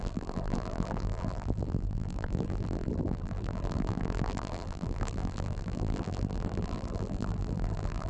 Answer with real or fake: fake